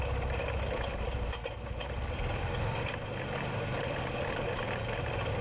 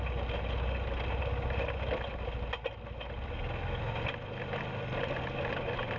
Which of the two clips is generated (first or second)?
first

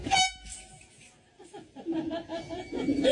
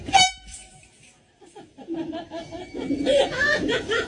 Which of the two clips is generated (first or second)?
second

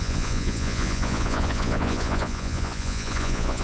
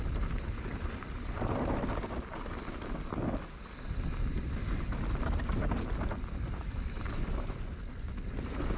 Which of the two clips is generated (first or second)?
first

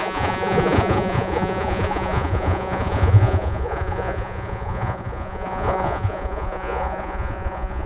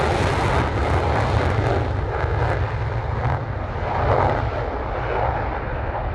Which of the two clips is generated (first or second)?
first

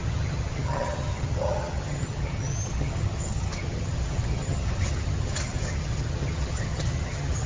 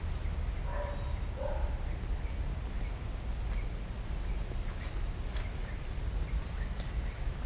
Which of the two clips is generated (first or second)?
first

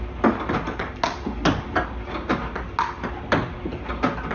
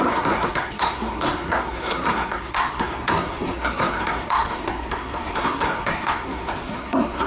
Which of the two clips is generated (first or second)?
second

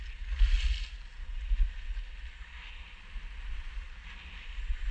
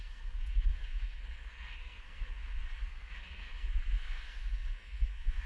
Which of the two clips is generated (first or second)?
second